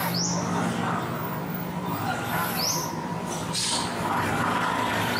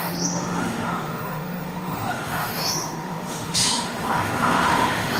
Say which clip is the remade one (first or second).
second